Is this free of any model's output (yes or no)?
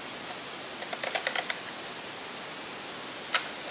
yes